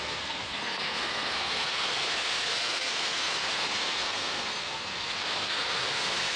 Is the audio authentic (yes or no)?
no